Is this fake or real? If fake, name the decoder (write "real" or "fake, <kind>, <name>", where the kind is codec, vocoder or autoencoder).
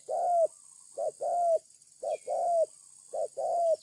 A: real